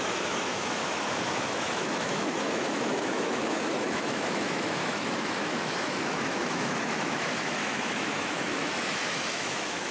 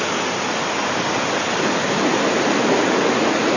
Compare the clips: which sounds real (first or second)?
second